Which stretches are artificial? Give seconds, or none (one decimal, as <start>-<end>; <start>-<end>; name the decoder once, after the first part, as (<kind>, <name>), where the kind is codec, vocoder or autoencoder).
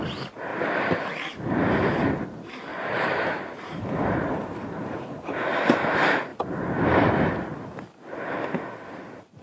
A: 2.7-5.8 (vocoder, BigVGAN v2); 6.3-7.4